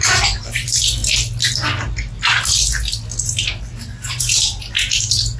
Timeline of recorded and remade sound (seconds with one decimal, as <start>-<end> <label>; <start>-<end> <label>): 0.0-1.0 remade; 1.0-4.2 recorded; 4.2-5.4 remade